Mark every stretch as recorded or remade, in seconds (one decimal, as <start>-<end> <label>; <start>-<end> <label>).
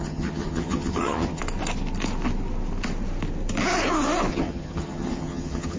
0.0-1.4 remade; 1.4-4.3 recorded; 4.3-5.8 remade